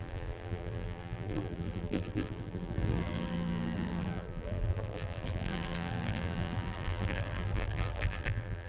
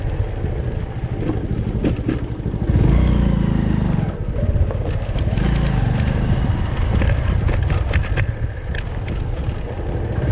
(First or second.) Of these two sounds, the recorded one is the second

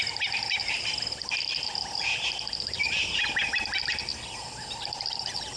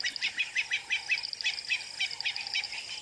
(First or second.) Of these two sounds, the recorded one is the second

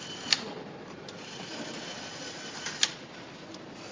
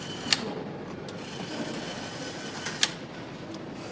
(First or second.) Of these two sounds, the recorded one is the second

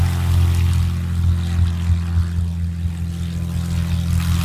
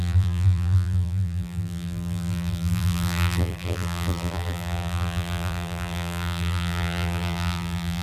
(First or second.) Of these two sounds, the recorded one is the first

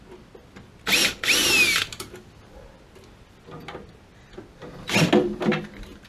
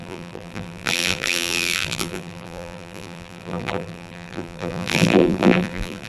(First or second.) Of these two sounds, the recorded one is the first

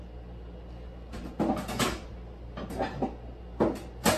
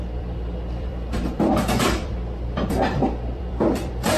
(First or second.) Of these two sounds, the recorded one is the first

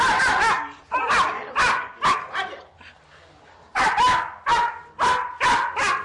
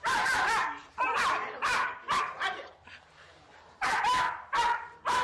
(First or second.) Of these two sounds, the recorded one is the first